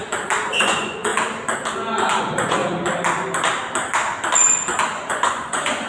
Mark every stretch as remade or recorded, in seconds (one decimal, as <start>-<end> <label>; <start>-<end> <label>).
0.0-0.6 recorded; 0.6-1.1 remade; 1.1-2.2 recorded; 2.2-2.6 remade; 2.6-5.0 recorded; 5.0-5.9 remade